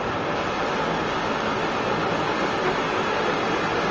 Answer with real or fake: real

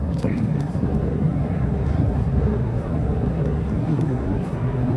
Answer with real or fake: fake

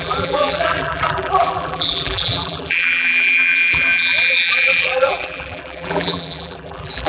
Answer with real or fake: fake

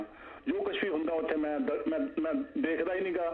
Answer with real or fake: real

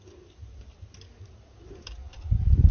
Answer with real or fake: real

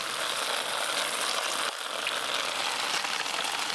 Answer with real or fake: real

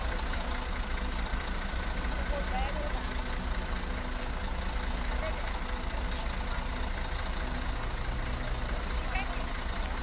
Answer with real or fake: real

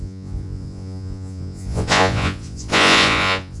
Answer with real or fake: fake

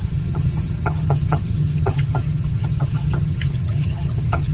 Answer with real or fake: fake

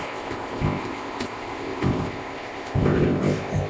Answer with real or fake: fake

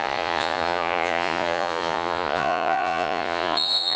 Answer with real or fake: fake